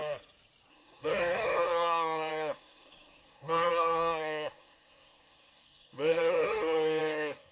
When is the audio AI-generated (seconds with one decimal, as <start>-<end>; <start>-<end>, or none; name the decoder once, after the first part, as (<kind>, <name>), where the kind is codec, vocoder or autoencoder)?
0.7-7.5 (codec, SNAC)